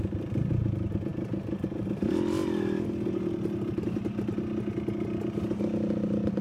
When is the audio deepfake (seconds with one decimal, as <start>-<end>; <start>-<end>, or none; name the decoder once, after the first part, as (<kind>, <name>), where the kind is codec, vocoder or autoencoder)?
none